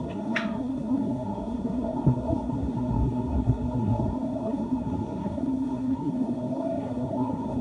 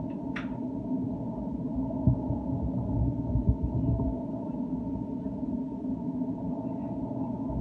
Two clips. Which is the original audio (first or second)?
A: second